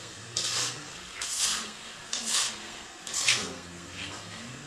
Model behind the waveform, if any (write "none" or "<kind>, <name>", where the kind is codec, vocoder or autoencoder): codec, SNAC